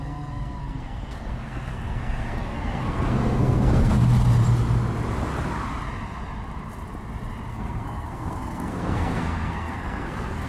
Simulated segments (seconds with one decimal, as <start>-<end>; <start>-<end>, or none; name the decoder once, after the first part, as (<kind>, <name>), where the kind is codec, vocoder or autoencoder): 0.0-4.0 (codec, SNAC); 7.5-10.5